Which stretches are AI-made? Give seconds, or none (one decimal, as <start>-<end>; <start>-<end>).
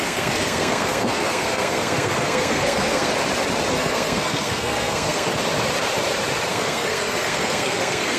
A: 0.0-3.1; 3.7-5.3; 6.5-8.2